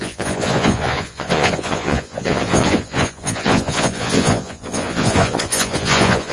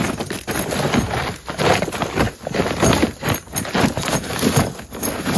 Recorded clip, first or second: second